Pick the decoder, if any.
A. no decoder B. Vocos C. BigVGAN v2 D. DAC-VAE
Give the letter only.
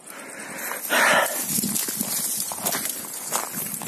A